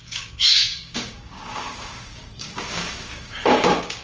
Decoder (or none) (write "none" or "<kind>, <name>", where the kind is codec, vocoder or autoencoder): codec, DAC